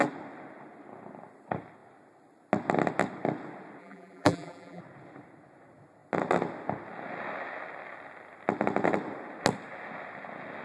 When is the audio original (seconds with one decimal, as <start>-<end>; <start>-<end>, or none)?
0.0-3.8; 4.8-10.6